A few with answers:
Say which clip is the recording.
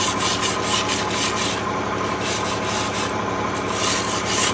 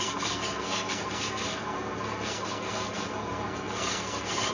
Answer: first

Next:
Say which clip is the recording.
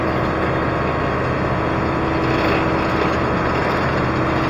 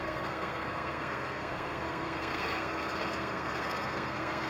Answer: first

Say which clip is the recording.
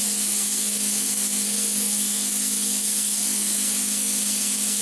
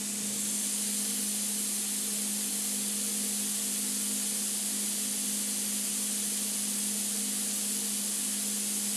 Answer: second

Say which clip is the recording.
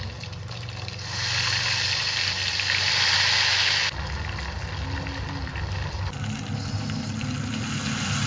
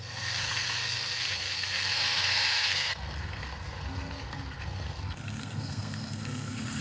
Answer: first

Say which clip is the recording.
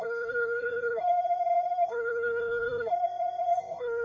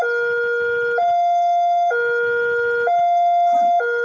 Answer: second